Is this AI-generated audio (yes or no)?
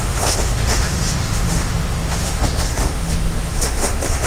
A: yes